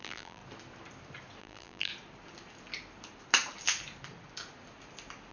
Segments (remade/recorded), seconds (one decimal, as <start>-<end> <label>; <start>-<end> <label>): 0.0-0.4 remade; 0.4-1.4 recorded; 1.4-1.9 remade; 1.9-5.3 recorded